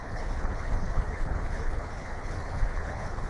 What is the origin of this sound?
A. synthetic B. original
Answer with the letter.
A